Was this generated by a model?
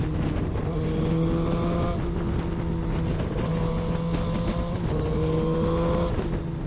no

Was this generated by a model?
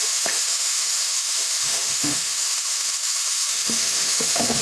yes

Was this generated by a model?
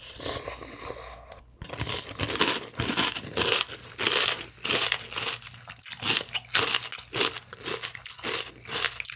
no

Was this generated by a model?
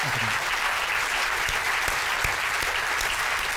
no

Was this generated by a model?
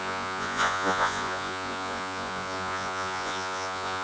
yes